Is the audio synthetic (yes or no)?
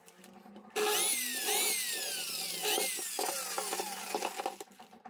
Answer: no